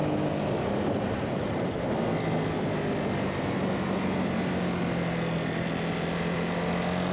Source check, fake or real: real